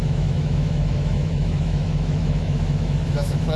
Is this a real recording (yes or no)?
no